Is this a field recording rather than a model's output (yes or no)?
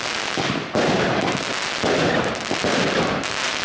yes